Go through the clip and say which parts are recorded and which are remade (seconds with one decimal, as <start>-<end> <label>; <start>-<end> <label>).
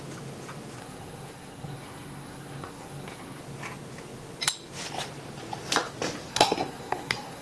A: 0.0-0.8 recorded; 0.8-3.4 remade; 3.4-6.3 recorded; 6.3-7.4 remade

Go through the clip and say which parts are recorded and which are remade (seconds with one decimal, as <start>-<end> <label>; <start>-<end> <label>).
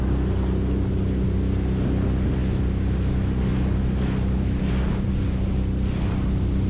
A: 0.0-6.7 recorded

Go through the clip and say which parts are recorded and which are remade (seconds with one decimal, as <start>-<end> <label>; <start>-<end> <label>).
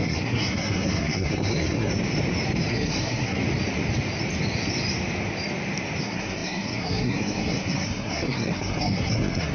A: 0.0-1.9 remade; 1.9-2.7 recorded; 2.7-3.4 remade; 3.4-6.0 recorded; 6.0-9.5 remade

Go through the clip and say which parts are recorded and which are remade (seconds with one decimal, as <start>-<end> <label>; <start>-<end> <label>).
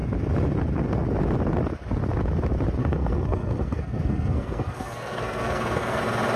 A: 0.0-2.8 recorded; 2.8-6.0 remade; 6.0-6.4 recorded